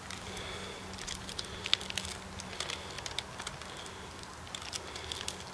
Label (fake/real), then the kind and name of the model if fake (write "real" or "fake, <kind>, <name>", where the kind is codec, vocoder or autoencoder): real